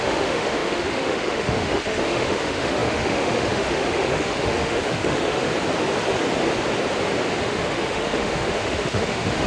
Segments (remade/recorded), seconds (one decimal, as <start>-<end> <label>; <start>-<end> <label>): 0.0-5.5 remade; 5.5-7.4 recorded; 7.4-9.5 remade